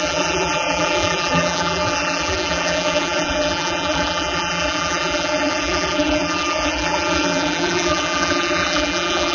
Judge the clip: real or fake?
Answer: fake